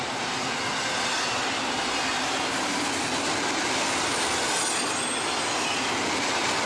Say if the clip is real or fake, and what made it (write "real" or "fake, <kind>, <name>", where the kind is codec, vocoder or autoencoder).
real